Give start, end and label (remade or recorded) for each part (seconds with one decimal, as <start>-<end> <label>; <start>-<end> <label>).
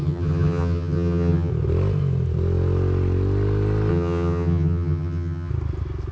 0.0-1.5 remade; 1.5-3.9 recorded; 3.9-5.5 remade; 5.5-6.1 recorded